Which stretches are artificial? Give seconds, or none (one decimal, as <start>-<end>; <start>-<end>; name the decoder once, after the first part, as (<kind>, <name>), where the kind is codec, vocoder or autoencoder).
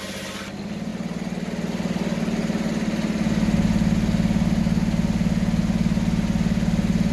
none